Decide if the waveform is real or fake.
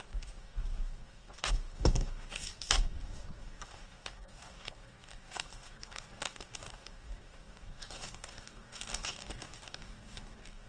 fake